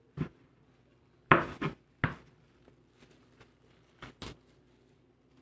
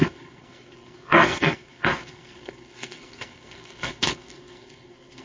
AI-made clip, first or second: second